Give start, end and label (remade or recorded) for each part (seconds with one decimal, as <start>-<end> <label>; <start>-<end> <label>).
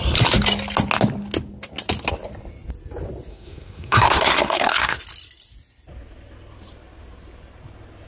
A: 0.0-3.3 recorded; 3.3-5.0 remade; 5.0-8.1 recorded